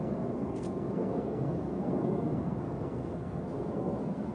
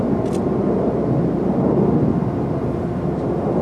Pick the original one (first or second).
second